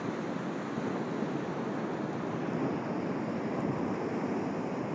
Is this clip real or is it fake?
real